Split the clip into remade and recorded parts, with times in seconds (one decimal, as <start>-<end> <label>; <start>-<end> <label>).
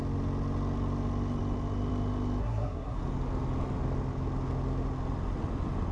0.0-2.4 recorded; 2.4-3.0 remade; 3.0-5.9 recorded